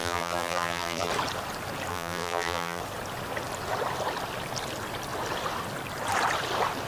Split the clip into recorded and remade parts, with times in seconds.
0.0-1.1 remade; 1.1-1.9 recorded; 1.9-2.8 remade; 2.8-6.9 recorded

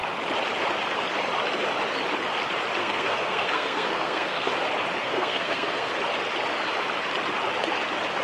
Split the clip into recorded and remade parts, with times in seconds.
0.0-2.8 recorded; 2.8-4.5 remade; 4.5-5.0 recorded; 5.0-5.9 remade; 5.9-8.2 recorded

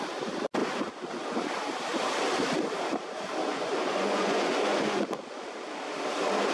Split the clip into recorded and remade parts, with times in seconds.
0.0-3.4 recorded; 3.4-5.0 remade; 5.0-6.5 recorded

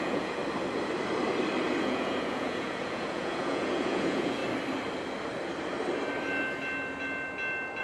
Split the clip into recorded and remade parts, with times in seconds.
0.0-0.4 remade; 0.4-1.8 recorded; 1.8-4.4 remade; 4.4-7.8 recorded

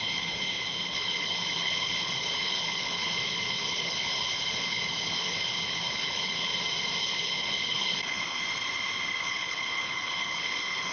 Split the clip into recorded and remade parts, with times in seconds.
0.0-6.5 remade; 6.5-7.0 recorded; 7.0-8.4 remade; 8.4-9.2 recorded; 9.2-10.9 remade

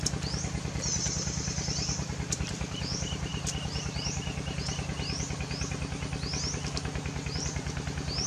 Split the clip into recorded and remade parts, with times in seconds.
0.0-3.3 remade; 3.3-7.3 recorded; 7.3-8.3 remade